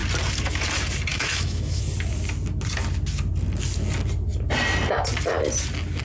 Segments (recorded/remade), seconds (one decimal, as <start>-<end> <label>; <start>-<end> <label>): 0.0-1.1 recorded; 1.1-1.8 remade; 1.8-6.0 recorded

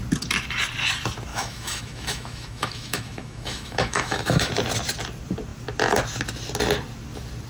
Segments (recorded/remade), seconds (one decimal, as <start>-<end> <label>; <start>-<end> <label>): 0.0-1.3 recorded; 1.3-4.5 remade; 4.5-7.5 recorded

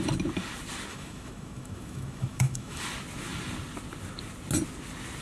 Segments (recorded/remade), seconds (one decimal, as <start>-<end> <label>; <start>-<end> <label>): 0.0-0.9 recorded; 0.9-2.8 remade; 2.8-5.2 recorded

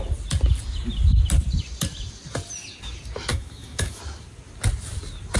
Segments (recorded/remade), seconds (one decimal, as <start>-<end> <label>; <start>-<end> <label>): 0.0-3.3 recorded; 3.3-4.0 remade; 4.0-5.4 recorded

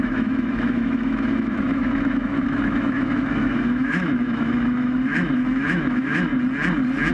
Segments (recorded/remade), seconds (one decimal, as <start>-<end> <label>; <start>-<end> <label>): 0.0-6.3 remade; 6.3-7.1 recorded